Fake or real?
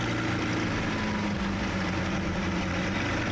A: real